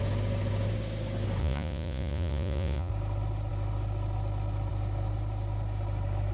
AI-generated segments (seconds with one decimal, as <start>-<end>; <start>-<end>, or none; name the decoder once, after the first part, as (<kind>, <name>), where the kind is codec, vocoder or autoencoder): 1.4-2.9 (vocoder, Vocos)